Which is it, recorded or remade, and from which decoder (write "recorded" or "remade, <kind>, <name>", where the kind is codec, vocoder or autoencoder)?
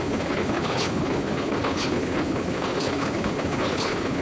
remade, codec, HILCodec